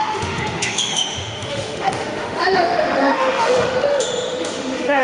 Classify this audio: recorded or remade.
remade